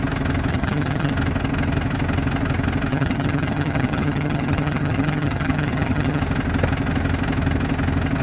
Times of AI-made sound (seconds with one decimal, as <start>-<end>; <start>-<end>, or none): 0.5-1.1; 2.9-6.2